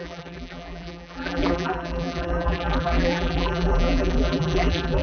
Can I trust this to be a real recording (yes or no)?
no